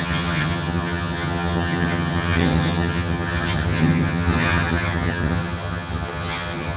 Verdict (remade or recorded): remade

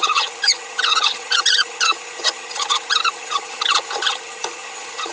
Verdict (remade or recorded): remade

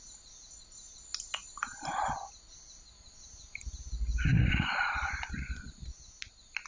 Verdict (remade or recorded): recorded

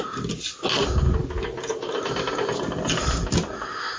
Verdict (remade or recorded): recorded